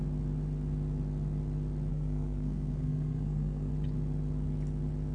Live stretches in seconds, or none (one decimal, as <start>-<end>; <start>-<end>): 0.0-1.9; 3.7-5.1